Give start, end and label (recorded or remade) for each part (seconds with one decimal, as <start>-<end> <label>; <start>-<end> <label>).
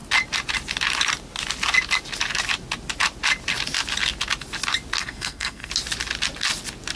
0.0-5.0 recorded; 5.0-5.7 remade; 5.7-7.0 recorded